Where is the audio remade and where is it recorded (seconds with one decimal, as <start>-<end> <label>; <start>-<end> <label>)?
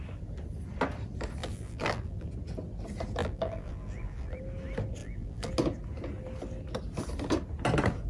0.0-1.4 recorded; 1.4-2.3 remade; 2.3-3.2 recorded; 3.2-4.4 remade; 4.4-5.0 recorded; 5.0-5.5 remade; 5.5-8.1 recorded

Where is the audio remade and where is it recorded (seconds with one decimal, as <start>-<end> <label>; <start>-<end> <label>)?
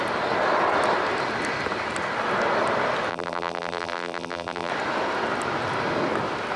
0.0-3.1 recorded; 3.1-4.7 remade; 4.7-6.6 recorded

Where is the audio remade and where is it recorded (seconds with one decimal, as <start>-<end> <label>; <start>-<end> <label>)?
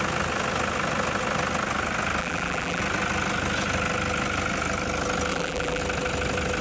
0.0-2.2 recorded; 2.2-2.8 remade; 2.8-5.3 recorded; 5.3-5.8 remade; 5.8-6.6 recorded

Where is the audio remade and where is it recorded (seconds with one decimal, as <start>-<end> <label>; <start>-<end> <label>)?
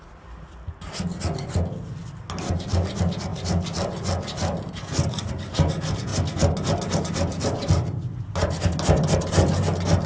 0.0-10.1 recorded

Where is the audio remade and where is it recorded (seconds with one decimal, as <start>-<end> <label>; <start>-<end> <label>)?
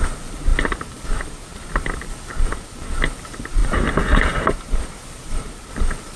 0.0-3.6 recorded; 3.6-5.7 remade; 5.7-6.2 recorded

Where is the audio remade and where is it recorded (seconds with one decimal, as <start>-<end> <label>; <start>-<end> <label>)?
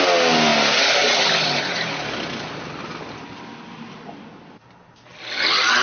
0.0-5.8 recorded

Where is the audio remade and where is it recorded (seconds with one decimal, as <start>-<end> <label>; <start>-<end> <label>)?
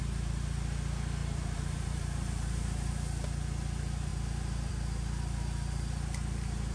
0.0-1.2 recorded; 1.2-2.9 remade; 2.9-6.7 recorded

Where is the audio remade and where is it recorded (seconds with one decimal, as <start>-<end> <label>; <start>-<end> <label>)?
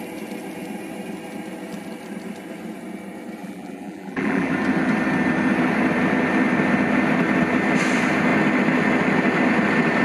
0.0-3.4 recorded; 3.4-4.5 remade; 4.5-10.0 recorded